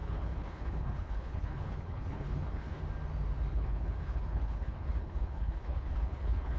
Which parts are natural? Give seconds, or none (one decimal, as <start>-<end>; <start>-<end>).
2.8-3.5